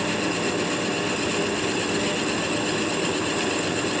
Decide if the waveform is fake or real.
fake